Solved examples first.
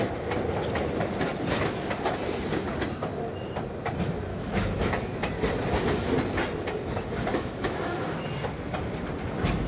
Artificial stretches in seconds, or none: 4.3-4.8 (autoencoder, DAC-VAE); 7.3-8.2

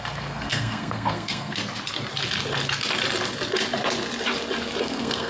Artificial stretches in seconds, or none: 0.0-1.6 (codec, SNAC); 4.8-5.3